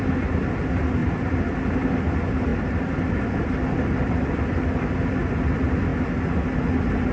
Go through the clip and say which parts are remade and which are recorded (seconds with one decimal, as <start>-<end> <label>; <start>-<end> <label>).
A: 0.0-5.9 remade; 5.9-7.1 recorded